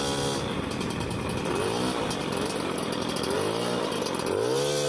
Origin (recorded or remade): recorded